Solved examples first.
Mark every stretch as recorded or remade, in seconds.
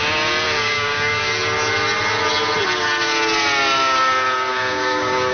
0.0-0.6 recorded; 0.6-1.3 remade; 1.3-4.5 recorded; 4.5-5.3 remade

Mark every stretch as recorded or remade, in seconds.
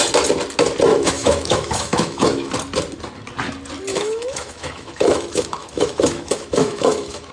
0.0-0.9 recorded; 0.9-2.5 remade; 2.5-3.9 recorded; 3.9-7.3 remade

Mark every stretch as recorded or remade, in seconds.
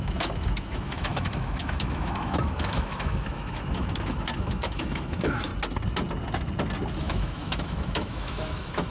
0.0-5.5 remade; 5.5-7.0 recorded; 7.0-8.9 remade